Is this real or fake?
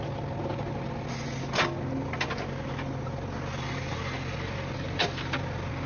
real